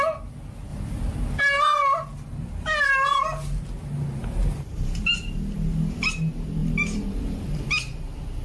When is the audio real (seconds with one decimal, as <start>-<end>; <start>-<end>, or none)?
0.0-4.2; 5.1-6.6; 7.7-8.4

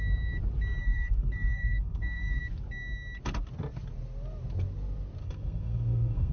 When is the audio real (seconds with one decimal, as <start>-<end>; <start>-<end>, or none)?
0.0-0.8; 2.4-5.2

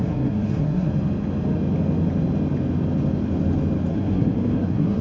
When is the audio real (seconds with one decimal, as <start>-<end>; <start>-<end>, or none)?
0.9-3.9

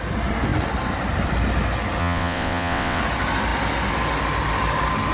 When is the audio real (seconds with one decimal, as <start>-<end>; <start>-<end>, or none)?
0.0-2.0; 3.0-5.1

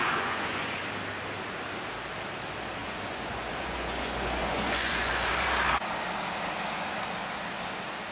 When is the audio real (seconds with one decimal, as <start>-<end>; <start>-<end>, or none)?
0.8-2.8; 5.3-8.1